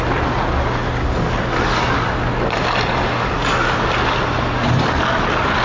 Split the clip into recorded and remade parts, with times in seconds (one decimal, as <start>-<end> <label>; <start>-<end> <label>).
0.0-5.6 recorded

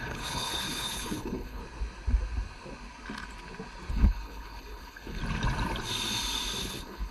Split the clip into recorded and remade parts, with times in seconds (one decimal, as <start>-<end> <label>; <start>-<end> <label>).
0.0-1.6 remade; 1.6-3.9 recorded; 3.9-5.2 remade; 5.2-6.6 recorded; 6.6-7.1 remade

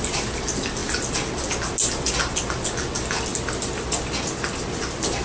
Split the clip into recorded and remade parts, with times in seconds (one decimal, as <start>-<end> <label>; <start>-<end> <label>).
0.0-5.2 recorded

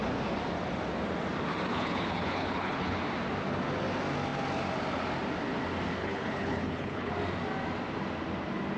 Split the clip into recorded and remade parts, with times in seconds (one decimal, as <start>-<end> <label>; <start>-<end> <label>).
0.0-1.7 recorded; 1.7-3.0 remade; 3.0-6.0 recorded; 6.0-7.1 remade; 7.1-8.8 recorded

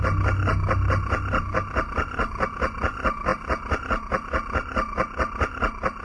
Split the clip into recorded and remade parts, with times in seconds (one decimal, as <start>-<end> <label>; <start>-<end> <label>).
0.0-6.0 recorded

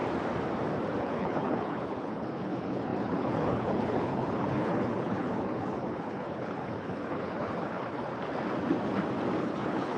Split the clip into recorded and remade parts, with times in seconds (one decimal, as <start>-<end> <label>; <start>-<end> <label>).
0.0-1.0 recorded; 1.0-8.1 remade; 8.1-9.4 recorded; 9.4-10.0 remade

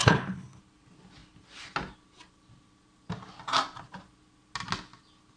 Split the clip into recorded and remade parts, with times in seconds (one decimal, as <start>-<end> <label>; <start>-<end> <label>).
0.0-0.6 remade; 0.6-5.4 recorded